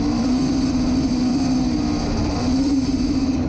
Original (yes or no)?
no